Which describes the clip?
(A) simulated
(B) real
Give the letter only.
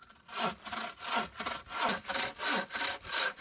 B